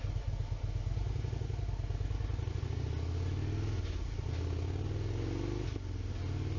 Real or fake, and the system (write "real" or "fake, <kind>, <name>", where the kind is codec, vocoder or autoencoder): real